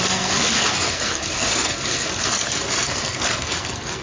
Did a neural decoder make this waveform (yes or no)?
yes